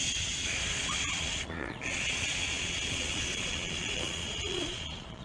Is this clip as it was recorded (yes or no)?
no